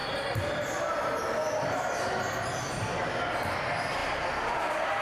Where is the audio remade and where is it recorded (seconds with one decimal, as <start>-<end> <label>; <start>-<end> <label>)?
0.0-5.0 recorded